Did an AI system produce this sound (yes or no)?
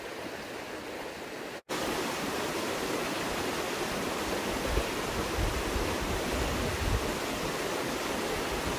no